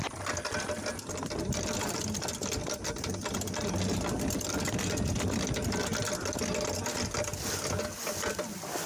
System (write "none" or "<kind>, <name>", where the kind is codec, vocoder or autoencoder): none